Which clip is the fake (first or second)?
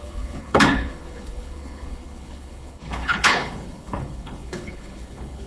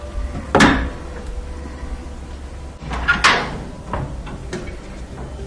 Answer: first